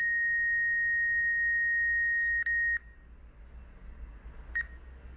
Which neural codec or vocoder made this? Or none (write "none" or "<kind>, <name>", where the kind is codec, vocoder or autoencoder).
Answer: none